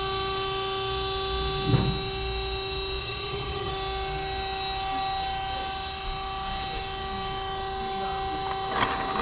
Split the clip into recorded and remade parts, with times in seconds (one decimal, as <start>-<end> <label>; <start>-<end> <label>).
0.0-3.0 recorded; 3.0-3.7 remade; 3.7-9.2 recorded